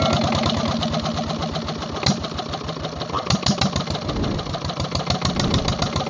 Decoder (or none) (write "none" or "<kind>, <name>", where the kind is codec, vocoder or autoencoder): none